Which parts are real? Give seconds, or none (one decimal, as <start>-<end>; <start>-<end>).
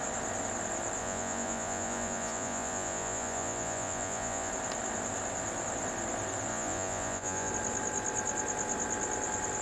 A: 0.0-1.0; 4.5-6.5; 7.5-9.6